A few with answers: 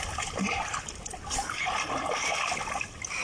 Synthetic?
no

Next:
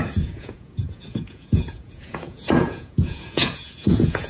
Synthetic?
yes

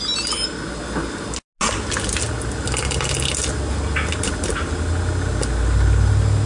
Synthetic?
no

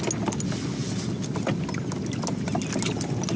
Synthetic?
no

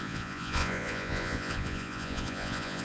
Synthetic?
yes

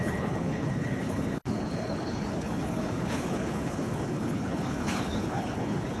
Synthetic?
yes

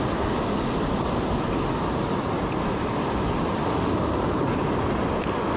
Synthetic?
no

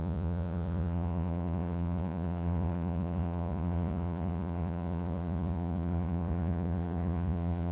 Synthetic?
yes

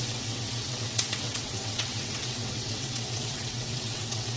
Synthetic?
yes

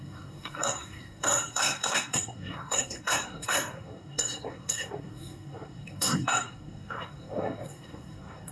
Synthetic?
yes